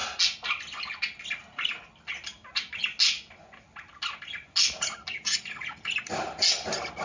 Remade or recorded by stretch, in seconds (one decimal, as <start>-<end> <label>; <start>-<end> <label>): 0.0-7.0 recorded